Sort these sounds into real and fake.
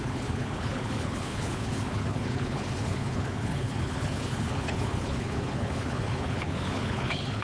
fake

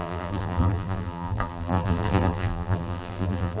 fake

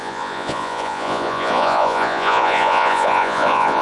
fake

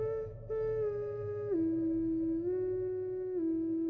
real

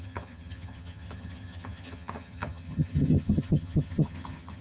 fake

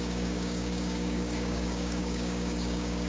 fake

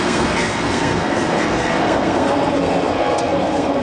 fake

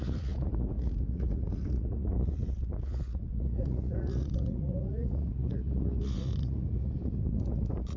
fake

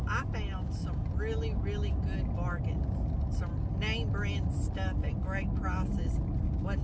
real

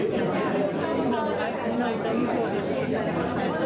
real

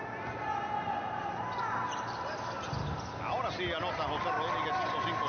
real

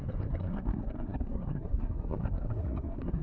fake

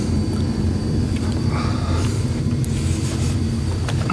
real